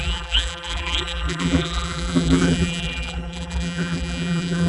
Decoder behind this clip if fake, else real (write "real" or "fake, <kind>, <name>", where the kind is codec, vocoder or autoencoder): fake, vocoder, BigVGAN v2